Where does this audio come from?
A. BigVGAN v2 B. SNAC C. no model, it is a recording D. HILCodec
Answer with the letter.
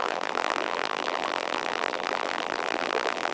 A